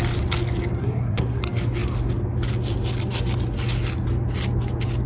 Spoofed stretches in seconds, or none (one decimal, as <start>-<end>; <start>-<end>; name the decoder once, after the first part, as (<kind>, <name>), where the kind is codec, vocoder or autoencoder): 0.8-1.4 (codec, SNAC)